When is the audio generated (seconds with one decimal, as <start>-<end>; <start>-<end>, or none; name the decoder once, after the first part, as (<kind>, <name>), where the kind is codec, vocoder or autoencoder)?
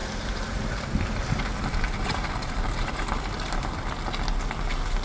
0.0-3.0 (vocoder, BigVGAN v2)